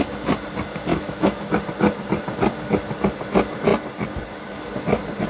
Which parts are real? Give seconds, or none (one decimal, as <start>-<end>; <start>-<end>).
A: 0.0-0.9; 1.6-5.3